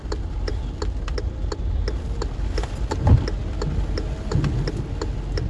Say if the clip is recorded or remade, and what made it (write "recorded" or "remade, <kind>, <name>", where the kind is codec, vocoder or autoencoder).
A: recorded